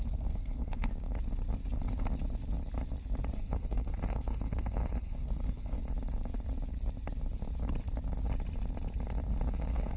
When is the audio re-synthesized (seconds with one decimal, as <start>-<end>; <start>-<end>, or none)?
0.0-0.9; 3.3-5.8; 9.5-10.0